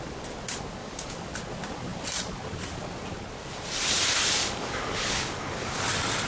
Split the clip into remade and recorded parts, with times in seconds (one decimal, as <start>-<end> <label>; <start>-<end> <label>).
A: 0.0-0.8 recorded; 0.8-1.3 remade; 1.3-4.4 recorded; 4.4-5.8 remade; 5.8-6.3 recorded